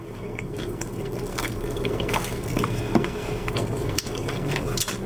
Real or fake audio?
fake